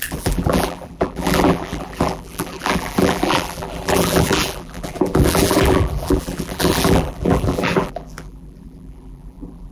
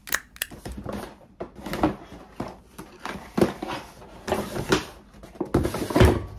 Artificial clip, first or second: first